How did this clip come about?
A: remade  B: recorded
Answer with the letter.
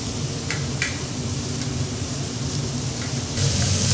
A